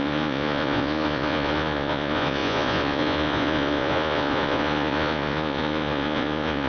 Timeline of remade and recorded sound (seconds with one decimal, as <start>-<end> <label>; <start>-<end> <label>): 0.0-6.7 remade